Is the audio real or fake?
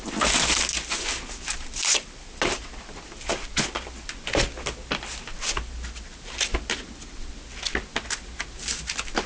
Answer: real